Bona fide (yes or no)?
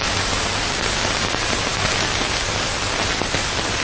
yes